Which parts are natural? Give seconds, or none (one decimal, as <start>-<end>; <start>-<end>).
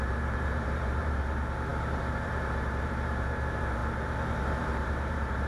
3.8-4.4